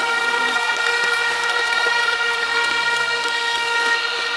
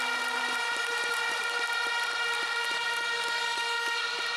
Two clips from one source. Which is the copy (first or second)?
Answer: first